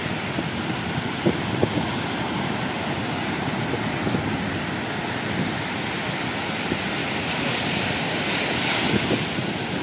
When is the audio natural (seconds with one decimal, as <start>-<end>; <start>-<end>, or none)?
0.0-7.0; 7.9-9.8